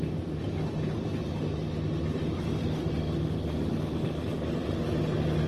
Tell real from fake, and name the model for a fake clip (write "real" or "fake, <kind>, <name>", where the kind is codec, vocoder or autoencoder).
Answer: real